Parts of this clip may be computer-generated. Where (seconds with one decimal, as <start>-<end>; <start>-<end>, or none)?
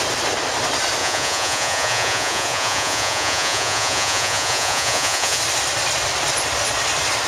1.0-5.4